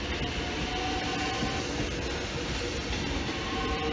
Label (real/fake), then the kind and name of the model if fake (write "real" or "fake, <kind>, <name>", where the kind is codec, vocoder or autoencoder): real